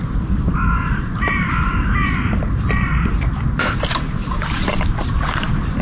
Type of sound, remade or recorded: remade